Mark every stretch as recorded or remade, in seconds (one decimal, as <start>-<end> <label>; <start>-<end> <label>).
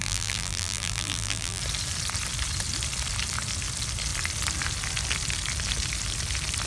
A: 0.0-1.6 remade; 1.6-6.7 recorded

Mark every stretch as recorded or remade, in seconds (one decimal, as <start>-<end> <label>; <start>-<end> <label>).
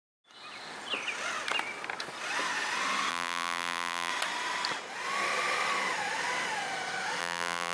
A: 0.0-3.1 recorded; 3.1-4.1 remade; 4.1-7.2 recorded; 7.2-7.7 remade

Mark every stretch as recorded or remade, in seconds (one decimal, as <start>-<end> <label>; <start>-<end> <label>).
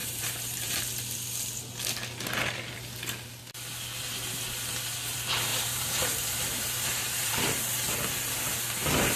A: 0.0-0.8 remade; 0.8-5.5 recorded; 5.5-7.9 remade; 7.9-9.2 recorded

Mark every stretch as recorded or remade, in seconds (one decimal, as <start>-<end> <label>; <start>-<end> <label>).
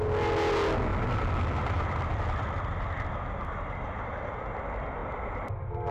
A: 0.0-0.9 recorded; 0.9-4.4 remade; 4.4-5.0 recorded; 5.0-5.5 remade; 5.5-5.9 recorded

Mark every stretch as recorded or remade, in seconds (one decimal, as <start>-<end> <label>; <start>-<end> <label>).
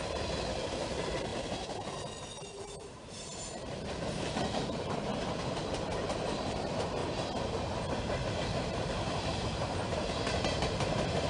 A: 0.0-1.3 remade; 1.3-2.6 recorded; 2.6-5.1 remade; 5.1-6.5 recorded; 6.5-7.0 remade; 7.0-8.3 recorded; 8.3-11.3 remade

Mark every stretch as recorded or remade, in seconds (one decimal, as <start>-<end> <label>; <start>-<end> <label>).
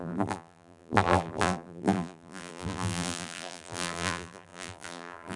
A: 0.0-5.4 remade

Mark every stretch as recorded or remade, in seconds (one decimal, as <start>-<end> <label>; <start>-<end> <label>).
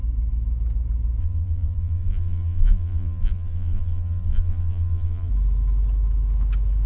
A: 0.0-1.2 recorded; 1.2-5.3 remade; 5.3-6.9 recorded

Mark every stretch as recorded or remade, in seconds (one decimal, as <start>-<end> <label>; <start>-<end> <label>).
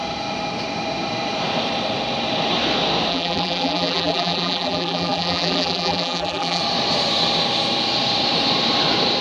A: 0.0-3.1 recorded; 3.1-6.6 remade; 6.6-9.2 recorded